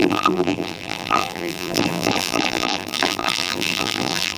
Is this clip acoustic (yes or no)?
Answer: no